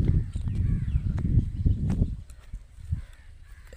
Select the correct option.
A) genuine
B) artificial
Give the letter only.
B